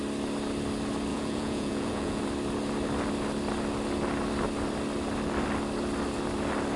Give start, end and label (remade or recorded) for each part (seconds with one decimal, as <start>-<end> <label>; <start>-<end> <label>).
0.0-1.1 recorded; 1.1-2.2 remade; 2.2-6.8 recorded